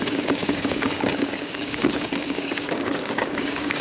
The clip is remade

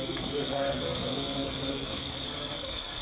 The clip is remade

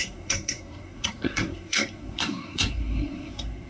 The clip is remade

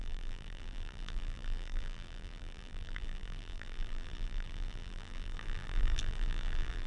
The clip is remade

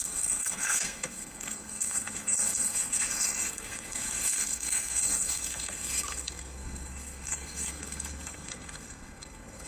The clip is remade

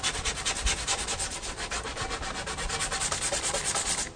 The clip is recorded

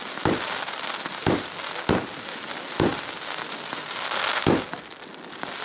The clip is recorded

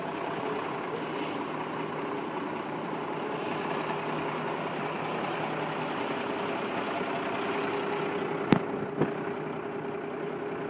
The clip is recorded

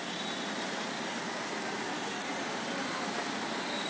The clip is recorded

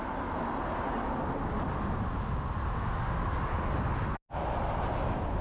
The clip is recorded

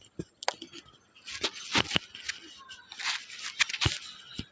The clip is recorded